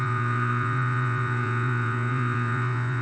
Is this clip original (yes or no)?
no